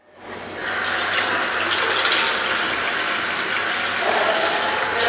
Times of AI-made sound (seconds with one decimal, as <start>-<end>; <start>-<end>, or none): none